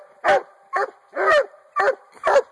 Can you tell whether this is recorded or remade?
recorded